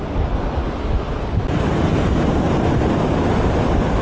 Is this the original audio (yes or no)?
yes